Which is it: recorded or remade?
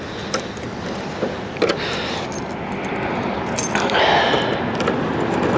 recorded